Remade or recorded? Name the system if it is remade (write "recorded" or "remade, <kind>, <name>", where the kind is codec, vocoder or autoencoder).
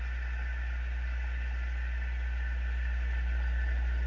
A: recorded